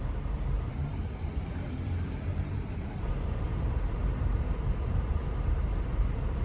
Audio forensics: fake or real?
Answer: fake